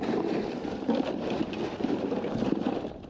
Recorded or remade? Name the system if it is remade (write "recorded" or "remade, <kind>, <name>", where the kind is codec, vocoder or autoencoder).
remade, vocoder, BigVGAN v2